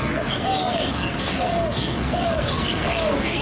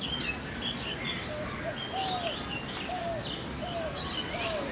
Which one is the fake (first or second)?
first